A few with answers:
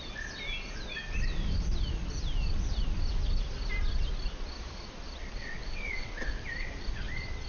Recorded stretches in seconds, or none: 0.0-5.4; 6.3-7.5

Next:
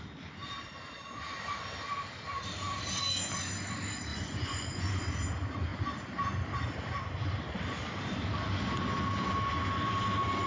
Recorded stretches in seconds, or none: 0.0-4.1; 4.9-10.5

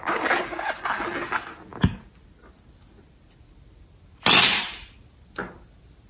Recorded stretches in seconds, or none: 0.0-6.1

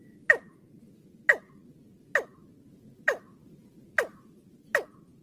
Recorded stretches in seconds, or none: 0.0-5.2

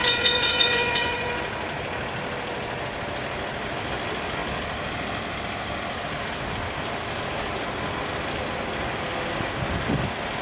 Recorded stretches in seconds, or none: 1.4-10.4

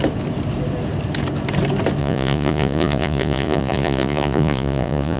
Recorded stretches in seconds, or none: 0.0-2.0

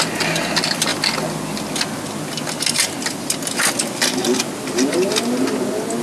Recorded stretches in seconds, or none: 0.0-6.0

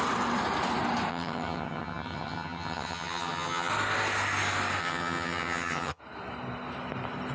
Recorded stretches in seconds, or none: 0.0-1.1; 3.7-4.8; 6.0-7.3